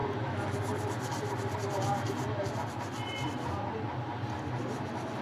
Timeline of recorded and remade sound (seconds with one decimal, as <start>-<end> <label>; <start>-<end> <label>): 0.0-5.2 recorded